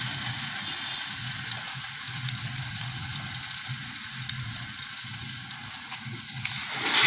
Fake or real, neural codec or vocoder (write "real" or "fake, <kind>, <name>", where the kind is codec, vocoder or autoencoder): fake, vocoder, Vocos